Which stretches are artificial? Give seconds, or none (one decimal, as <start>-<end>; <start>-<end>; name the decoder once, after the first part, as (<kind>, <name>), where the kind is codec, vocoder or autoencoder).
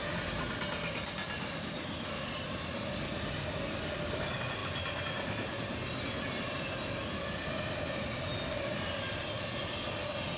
none